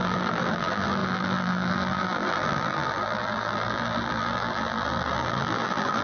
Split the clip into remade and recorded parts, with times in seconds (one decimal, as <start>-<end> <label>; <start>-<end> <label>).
0.0-6.0 remade